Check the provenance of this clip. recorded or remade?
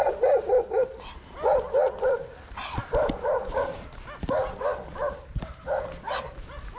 recorded